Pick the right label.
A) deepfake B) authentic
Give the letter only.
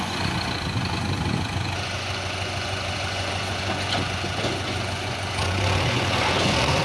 A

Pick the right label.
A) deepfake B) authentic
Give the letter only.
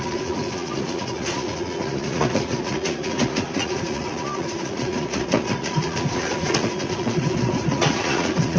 A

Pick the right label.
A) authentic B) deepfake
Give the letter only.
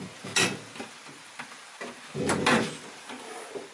A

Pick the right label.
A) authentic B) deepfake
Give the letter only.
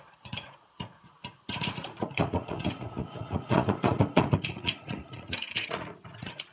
B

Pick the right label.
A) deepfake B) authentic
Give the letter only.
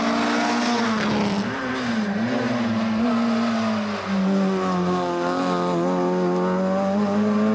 B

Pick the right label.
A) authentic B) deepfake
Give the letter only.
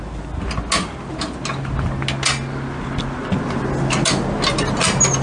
A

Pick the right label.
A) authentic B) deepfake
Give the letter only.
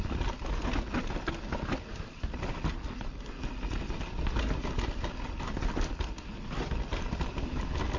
A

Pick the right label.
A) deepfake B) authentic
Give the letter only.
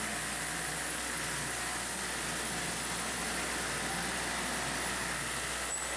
B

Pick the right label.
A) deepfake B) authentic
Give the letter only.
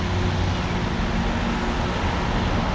B